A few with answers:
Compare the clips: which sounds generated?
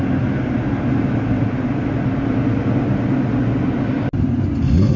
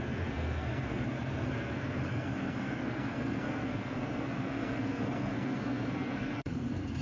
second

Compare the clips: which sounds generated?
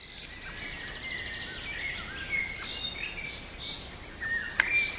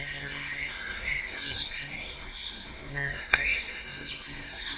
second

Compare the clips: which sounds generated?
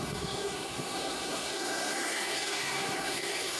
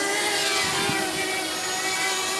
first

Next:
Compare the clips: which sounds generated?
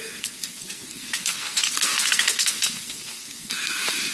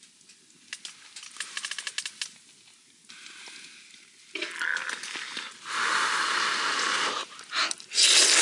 first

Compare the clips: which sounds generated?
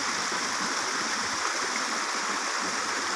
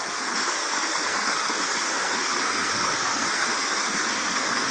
second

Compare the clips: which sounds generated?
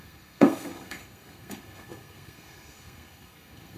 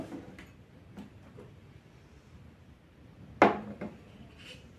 first